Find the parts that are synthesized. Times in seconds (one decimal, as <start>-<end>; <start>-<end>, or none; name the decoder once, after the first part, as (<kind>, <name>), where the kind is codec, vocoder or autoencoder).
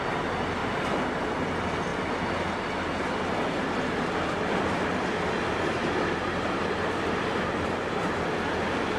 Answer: 0.6-1.5 (vocoder, BigVGAN v2); 5.8-6.5